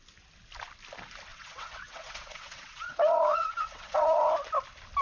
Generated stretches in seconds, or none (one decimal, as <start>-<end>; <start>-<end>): 1.3-4.3